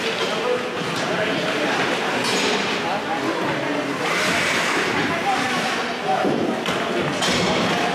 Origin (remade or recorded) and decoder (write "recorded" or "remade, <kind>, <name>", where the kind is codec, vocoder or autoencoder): recorded